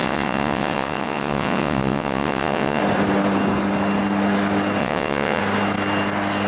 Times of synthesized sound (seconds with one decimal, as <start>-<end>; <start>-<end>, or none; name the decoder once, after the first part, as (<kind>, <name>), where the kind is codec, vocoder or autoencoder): 0.0-2.8 (vocoder, WaveNeXt); 4.8-5.4